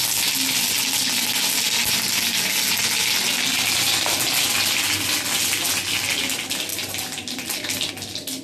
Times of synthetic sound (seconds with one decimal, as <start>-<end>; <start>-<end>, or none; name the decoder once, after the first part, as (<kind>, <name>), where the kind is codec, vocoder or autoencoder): 6.7-7.9 (vocoder, BigVGAN v2)